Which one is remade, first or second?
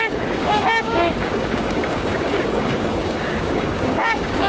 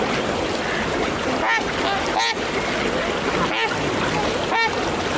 first